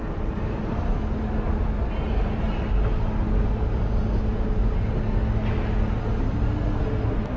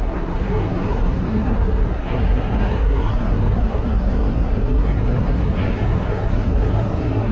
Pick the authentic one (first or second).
first